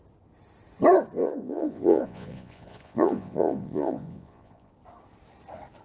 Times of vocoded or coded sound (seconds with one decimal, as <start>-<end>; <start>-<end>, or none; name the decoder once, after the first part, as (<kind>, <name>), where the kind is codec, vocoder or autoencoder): 1.2-4.7 (vocoder, Vocos)